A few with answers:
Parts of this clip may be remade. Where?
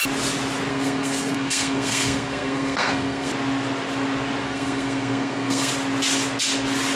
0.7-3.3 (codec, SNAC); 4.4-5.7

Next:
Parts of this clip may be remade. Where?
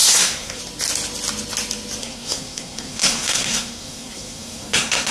0.0-0.6 (codec, SNAC); 2.0-5.1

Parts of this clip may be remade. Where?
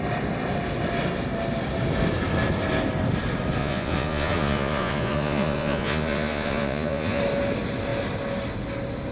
3.6-7.2 (vocoder, Vocos)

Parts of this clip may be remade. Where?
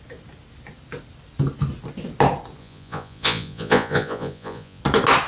2.6-4.8 (vocoder, Vocos)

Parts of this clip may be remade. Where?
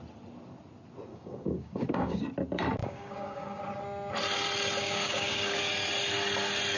1.1-2.2 (codec, DAC); 2.8-3.6; 4.8-5.5